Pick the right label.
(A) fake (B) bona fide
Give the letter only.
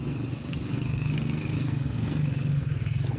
A